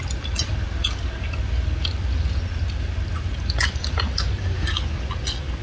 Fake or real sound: real